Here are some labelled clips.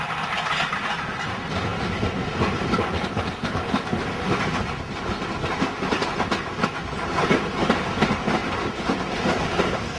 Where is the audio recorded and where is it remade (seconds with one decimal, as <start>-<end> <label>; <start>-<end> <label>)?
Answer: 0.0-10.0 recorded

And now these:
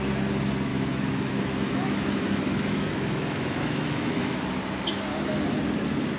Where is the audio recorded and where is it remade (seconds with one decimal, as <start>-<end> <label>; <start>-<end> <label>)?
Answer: 0.0-0.7 recorded; 0.7-4.4 remade; 4.4-6.2 recorded

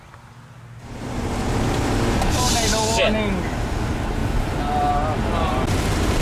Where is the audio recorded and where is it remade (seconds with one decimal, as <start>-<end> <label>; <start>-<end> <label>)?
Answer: 0.0-6.2 recorded

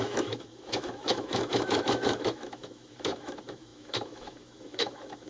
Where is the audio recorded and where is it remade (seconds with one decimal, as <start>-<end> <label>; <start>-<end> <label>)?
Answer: 0.0-5.3 remade